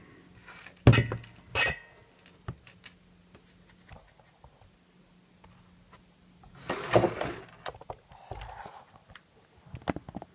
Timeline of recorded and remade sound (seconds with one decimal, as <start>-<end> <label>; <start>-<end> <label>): 0.0-10.3 recorded